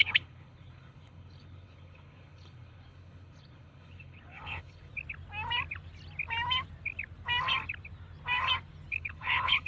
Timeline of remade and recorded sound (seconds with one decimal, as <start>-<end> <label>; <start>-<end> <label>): 0.0-4.9 remade; 4.9-8.9 recorded; 8.9-9.7 remade